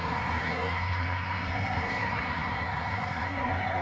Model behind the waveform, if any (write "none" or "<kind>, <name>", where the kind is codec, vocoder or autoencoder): codec, SNAC